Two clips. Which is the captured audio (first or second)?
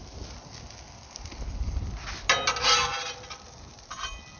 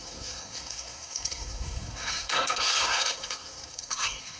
first